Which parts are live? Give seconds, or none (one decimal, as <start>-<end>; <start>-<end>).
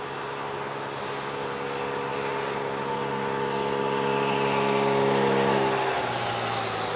0.0-7.0